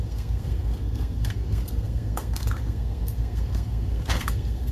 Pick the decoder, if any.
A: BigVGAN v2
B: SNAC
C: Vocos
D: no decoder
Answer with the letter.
B